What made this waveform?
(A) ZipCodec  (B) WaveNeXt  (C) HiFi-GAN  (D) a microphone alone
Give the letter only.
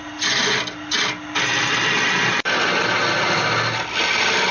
D